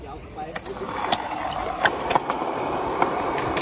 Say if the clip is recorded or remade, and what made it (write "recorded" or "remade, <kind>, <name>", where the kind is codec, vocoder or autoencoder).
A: recorded